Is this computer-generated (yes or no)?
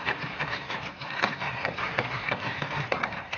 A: yes